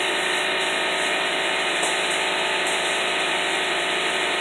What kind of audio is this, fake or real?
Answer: fake